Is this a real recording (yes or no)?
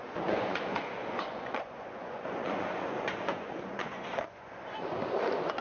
no